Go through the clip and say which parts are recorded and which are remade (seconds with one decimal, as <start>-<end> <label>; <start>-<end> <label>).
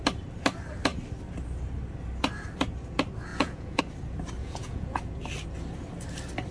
0.0-3.3 recorded; 3.3-3.8 remade; 3.8-4.4 recorded; 4.4-5.0 remade; 5.0-6.5 recorded